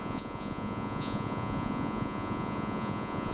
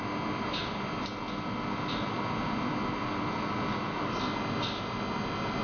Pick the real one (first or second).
second